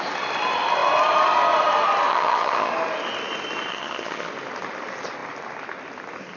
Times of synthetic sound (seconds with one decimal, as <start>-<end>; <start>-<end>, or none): 2.1-2.7; 3.7-4.3